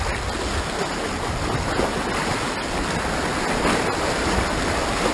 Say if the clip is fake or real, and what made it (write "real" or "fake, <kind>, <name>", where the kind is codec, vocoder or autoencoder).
real